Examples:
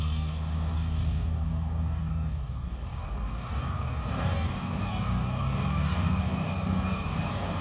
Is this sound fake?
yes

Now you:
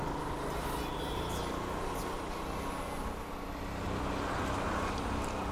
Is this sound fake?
no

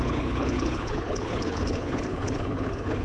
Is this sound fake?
yes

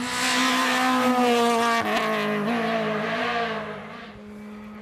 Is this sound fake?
no